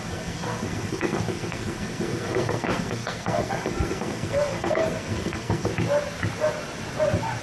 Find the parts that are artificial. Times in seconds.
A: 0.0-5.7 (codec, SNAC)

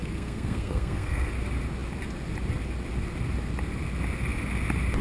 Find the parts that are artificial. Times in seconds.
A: 0.0-1.3 (codec, SNAC)

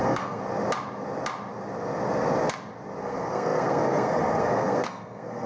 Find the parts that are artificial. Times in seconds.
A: 0.0-0.4 (codec, SNAC); 3.0-5.5

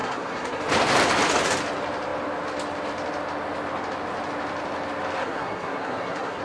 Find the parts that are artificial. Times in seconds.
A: 0.0-0.6 (codec, SNAC); 5.2-6.4

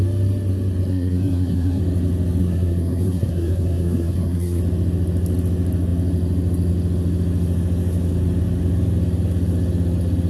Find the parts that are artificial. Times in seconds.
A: 0.9-1.8 (codec, SNAC); 2.4-4.6

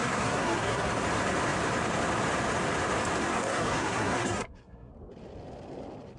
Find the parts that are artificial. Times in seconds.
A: 0.0-0.9 (codec, SNAC); 3.2-4.9

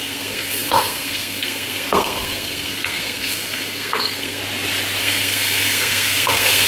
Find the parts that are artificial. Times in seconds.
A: 0.0-4.4 (codec, SNAC); 5.0-6.7